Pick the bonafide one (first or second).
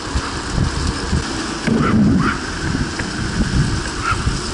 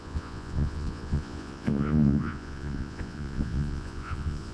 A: first